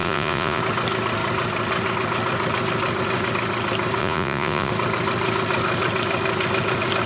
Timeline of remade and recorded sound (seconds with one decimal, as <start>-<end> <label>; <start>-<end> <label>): 0.0-0.6 remade; 0.6-4.0 recorded; 4.0-4.7 remade; 4.7-7.1 recorded